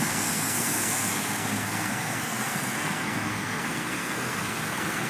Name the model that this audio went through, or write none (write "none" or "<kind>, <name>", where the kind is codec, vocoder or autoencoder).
codec, SNAC